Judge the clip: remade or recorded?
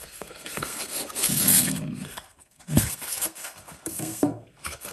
remade